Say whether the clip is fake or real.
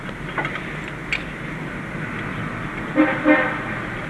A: real